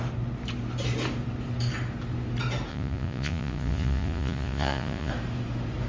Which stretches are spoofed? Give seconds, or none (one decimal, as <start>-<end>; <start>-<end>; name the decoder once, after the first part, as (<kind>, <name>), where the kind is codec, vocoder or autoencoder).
2.7-5.1 (vocoder, Vocos)